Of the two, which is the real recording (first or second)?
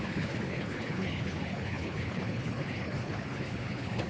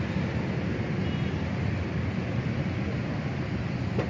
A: second